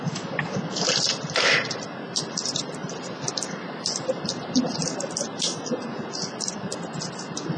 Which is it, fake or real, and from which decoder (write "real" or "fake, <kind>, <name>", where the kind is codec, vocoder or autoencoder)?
fake, vocoder, BigVGAN v2